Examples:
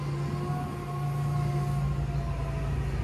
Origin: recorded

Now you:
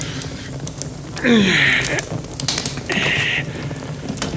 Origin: recorded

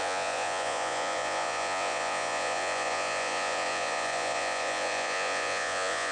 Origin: remade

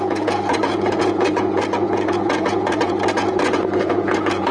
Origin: remade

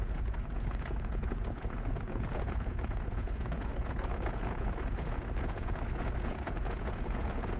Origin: remade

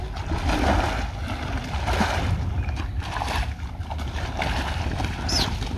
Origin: recorded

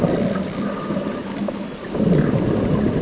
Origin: recorded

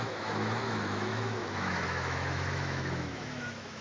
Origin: remade